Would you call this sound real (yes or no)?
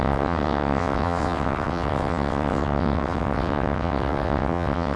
no